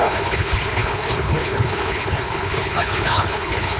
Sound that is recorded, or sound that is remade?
remade